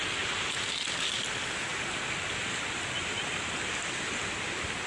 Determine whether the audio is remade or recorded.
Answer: recorded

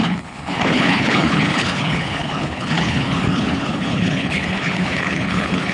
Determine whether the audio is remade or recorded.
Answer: remade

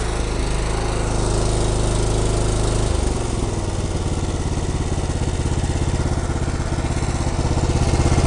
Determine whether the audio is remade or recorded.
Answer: recorded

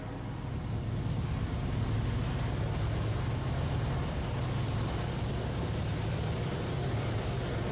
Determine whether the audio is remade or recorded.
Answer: recorded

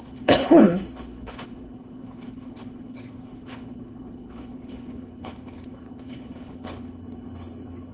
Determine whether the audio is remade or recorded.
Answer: remade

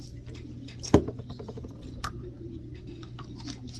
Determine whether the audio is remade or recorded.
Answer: recorded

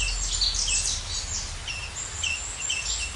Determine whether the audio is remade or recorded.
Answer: recorded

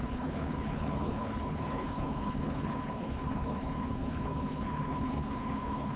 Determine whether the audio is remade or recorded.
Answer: remade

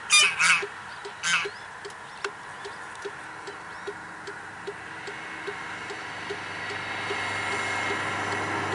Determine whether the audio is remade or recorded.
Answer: recorded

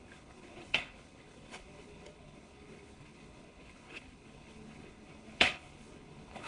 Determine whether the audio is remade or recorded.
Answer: remade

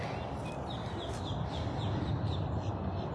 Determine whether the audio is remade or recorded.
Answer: recorded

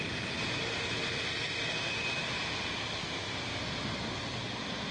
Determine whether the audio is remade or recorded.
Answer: recorded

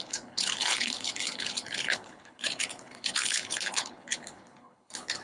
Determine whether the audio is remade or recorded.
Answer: remade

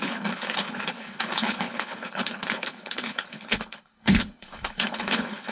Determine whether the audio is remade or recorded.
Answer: remade